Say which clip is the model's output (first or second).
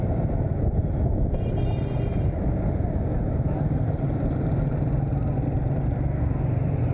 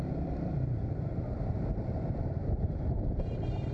second